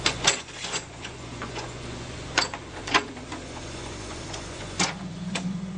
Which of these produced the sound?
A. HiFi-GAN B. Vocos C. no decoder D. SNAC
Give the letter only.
B